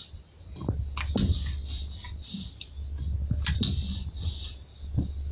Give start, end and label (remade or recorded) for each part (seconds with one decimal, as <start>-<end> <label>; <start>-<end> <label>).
0.0-5.3 recorded